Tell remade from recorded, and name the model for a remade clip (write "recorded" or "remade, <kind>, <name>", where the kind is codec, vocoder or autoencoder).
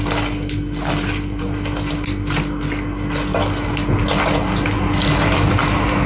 recorded